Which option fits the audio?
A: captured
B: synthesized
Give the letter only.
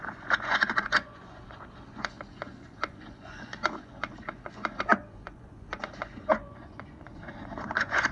B